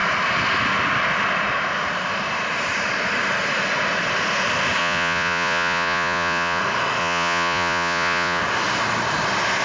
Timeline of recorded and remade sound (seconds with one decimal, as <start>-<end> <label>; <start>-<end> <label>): 0.0-4.8 recorded; 4.8-6.6 remade; 6.6-7.0 recorded; 7.0-8.4 remade; 8.4-9.6 recorded

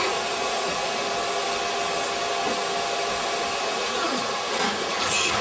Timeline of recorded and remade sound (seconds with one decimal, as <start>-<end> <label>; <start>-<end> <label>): 0.0-1.0 remade; 1.0-3.6 recorded; 3.6-5.4 remade

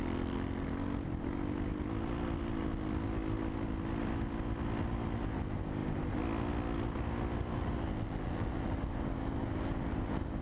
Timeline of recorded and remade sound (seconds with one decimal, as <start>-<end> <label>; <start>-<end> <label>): 0.0-10.4 recorded